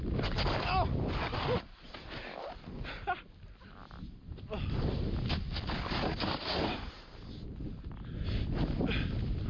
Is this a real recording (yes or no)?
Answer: yes